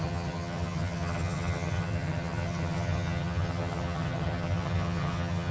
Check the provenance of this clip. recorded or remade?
remade